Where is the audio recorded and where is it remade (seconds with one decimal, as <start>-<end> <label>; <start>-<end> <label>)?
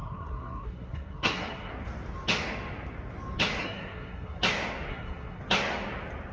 0.0-1.7 remade; 1.7-3.6 recorded; 3.6-4.4 remade; 4.4-4.9 recorded; 4.9-5.4 remade; 5.4-6.3 recorded